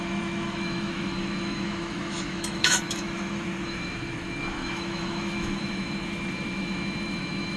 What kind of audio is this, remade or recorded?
remade